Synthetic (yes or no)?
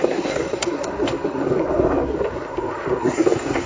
yes